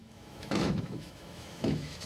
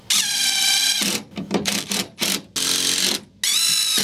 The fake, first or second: first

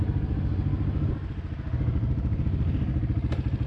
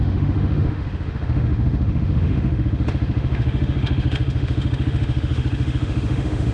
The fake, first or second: second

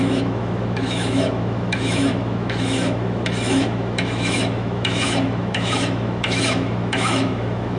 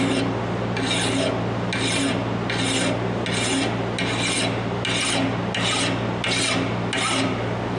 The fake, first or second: first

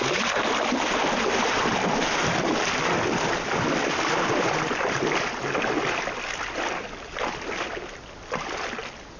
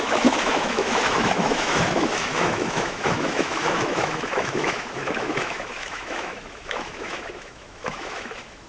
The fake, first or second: second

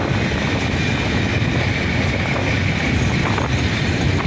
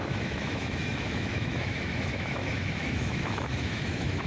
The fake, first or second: second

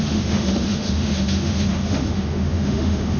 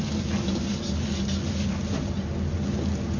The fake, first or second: first